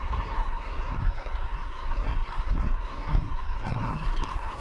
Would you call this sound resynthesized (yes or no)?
yes